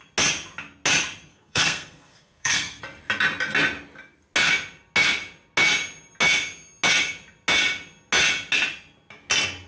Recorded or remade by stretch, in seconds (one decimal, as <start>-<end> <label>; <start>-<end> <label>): 0.0-1.3 recorded; 1.3-2.8 remade; 2.8-9.7 recorded